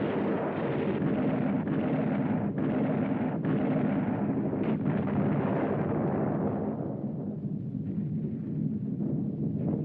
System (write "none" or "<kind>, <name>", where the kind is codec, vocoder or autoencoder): none